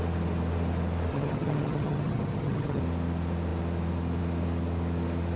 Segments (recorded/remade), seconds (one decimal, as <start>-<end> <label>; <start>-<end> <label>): 0.0-1.1 recorded; 1.1-2.8 remade; 2.8-5.4 recorded

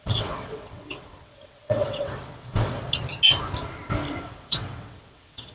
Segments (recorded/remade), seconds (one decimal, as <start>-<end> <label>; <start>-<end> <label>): 0.0-2.8 remade; 2.8-4.1 recorded; 4.1-5.5 remade

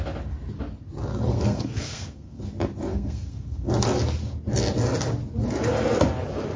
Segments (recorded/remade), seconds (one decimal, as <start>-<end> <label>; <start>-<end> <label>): 0.0-1.3 recorded; 1.3-2.4 remade; 2.4-2.9 recorded; 2.9-3.7 remade; 3.7-6.6 recorded

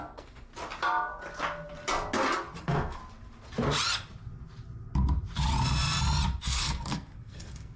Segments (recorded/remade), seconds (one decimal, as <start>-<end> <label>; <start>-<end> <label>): 0.0-0.5 remade; 0.5-2.6 recorded; 2.6-3.0 remade; 3.0-6.4 recorded; 6.4-7.8 remade

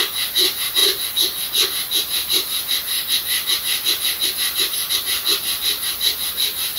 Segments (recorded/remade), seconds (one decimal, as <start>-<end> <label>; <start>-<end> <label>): 0.0-6.8 recorded

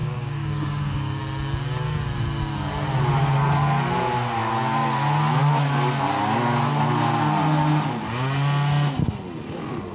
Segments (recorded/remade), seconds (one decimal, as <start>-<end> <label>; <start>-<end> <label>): 0.0-1.2 remade; 1.2-9.9 recorded

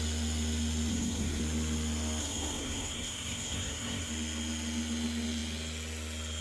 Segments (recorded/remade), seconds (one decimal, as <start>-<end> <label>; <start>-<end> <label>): 0.0-0.9 recorded; 0.9-1.4 remade; 1.4-2.2 recorded; 2.2-4.1 remade; 4.1-6.4 recorded

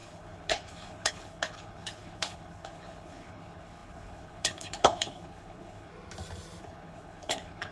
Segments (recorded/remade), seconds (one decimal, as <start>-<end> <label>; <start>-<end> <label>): 0.0-5.9 remade; 5.9-6.6 recorded; 6.6-7.7 remade